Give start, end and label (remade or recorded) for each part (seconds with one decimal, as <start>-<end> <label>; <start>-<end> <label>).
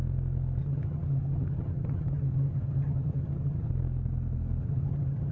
0.0-0.6 recorded; 0.6-3.7 remade; 3.7-4.6 recorded; 4.6-5.3 remade